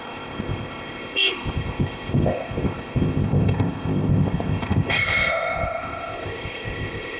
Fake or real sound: fake